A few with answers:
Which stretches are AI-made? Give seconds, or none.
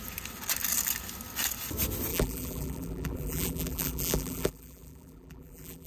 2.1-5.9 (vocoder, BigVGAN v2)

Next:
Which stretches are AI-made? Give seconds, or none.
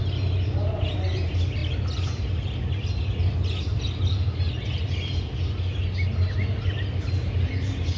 none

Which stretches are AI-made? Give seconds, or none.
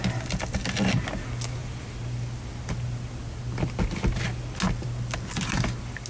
none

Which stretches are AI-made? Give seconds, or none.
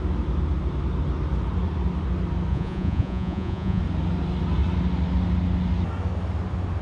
2.5-3.8 (vocoder, Vocos)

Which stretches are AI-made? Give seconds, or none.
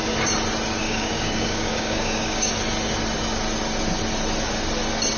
0.8-2.5 (codec, DAC)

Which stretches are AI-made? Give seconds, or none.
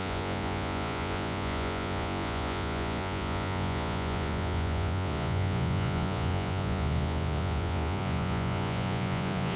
0.0-9.6 (vocoder, Vocos)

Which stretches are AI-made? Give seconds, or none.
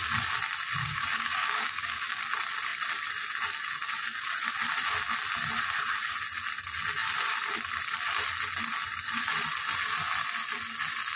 0.8-2.2 (codec, DAC)